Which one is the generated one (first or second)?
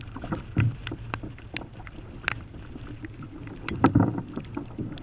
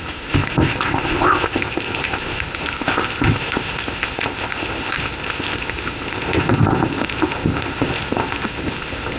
second